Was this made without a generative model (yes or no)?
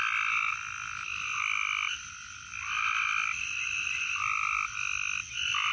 yes